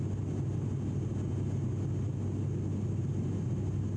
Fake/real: real